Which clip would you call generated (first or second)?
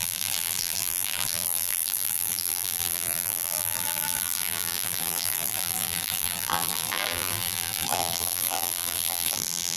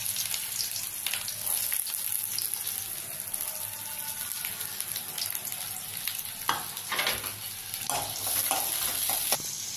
first